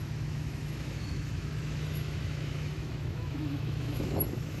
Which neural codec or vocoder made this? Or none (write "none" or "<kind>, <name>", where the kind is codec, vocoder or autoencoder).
autoencoder, DAC-VAE